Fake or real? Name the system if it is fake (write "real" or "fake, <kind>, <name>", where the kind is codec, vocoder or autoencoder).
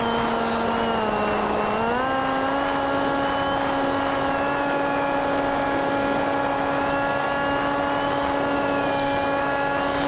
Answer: real